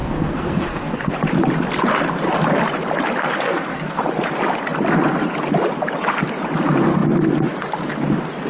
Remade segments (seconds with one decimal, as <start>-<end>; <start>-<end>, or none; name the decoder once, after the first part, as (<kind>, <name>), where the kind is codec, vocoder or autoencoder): 0.0-1.1 (codec, SNAC); 3.2-4.0